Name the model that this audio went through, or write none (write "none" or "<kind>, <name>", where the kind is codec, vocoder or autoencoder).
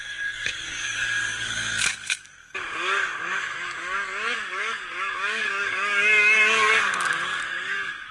codec, DAC